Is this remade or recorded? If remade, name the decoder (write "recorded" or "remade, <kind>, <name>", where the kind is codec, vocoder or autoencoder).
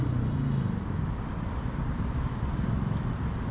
recorded